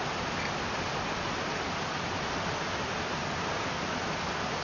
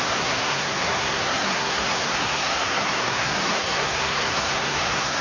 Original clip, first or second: first